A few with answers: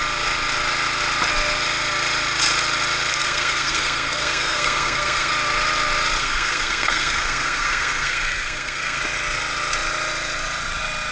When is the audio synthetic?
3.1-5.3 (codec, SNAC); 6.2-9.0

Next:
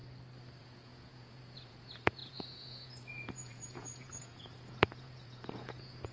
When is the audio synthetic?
0.6-6.1 (vocoder, Vocos)

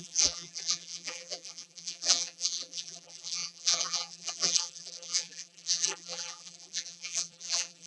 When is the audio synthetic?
0.0-7.9 (vocoder, BigVGAN v2)

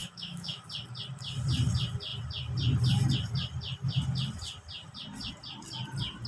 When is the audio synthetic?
0.0-0.6 (autoencoder, DAC-VAE)

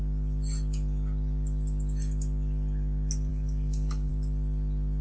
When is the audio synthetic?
3.3-4.1 (codec, DAC)

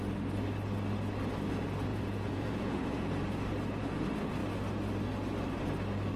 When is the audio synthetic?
1.9-3.1 (vocoder, Vocos)

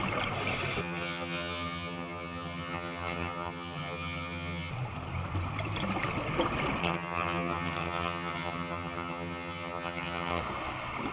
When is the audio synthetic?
0.8-4.7 (vocoder, HiFi-GAN); 6.8-10.4